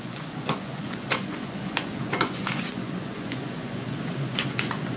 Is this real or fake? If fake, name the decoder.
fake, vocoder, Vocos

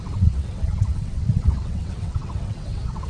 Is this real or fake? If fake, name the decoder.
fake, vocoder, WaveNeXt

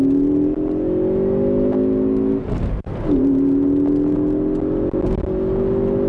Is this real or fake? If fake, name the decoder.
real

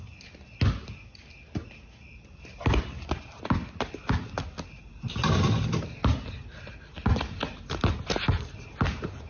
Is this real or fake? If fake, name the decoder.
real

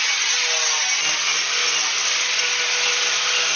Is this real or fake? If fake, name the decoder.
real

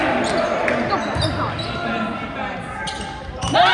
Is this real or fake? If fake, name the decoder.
real